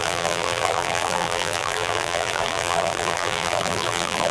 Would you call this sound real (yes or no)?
no